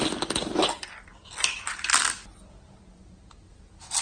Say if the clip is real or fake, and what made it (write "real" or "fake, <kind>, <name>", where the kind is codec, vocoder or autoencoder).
real